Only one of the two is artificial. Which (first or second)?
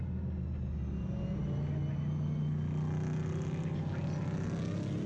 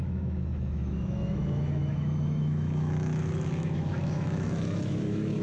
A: second